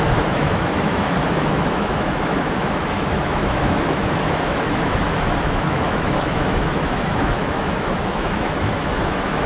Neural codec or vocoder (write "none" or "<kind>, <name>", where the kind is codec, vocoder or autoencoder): autoencoder, DAC-VAE